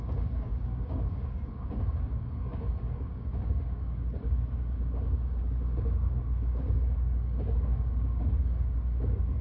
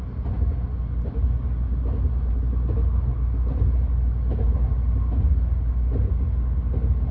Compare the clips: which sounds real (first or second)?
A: second